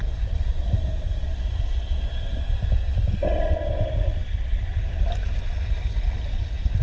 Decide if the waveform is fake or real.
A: real